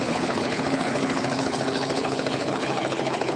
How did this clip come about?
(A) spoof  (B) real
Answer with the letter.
A